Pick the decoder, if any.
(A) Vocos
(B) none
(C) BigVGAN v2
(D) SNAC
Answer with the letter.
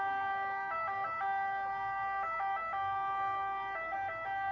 B